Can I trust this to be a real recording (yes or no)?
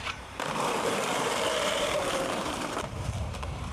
no